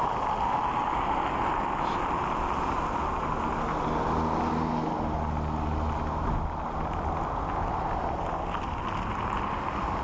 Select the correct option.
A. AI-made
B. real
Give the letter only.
B